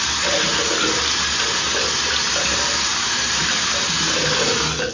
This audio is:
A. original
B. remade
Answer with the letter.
A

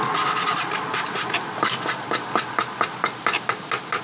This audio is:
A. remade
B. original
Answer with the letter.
B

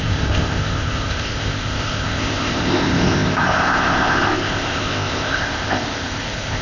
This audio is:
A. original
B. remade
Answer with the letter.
B